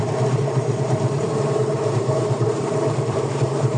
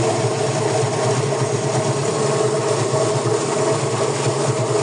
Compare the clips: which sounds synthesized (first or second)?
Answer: first